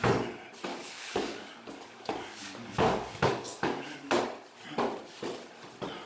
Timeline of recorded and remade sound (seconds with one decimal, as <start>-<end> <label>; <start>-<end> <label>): 0.0-0.7 recorded; 0.7-4.1 remade; 4.1-6.1 recorded